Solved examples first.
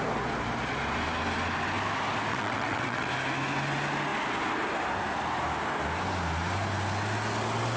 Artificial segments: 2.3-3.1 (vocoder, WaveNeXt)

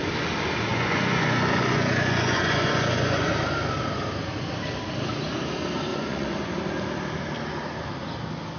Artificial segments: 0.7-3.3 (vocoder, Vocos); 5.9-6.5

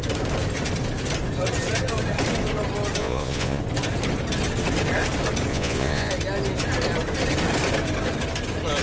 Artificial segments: 3.0-3.6 (vocoder, Vocos); 5.5-6.1

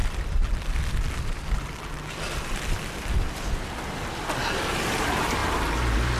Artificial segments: 0.0-3.7 (vocoder, BigVGAN v2)

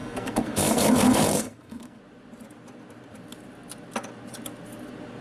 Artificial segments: 0.0-2.0 (codec, SNAC)

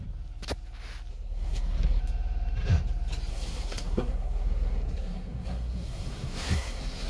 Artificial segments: 1.1-2.0 (codec, SNAC); 3.3-7.1